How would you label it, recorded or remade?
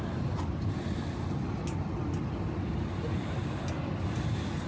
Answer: recorded